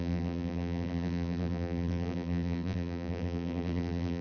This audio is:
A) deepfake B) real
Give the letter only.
A